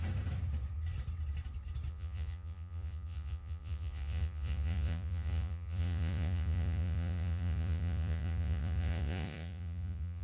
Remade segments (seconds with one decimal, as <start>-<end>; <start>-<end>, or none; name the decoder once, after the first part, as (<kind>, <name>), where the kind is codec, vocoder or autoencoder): 1.9-10.2 (vocoder, Vocos)